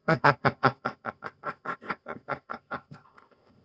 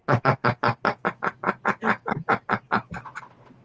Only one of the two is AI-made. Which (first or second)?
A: first